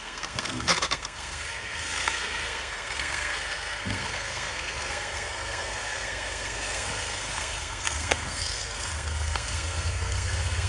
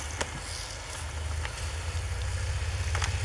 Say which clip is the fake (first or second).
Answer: first